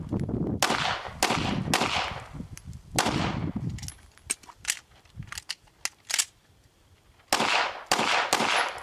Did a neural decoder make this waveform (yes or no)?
no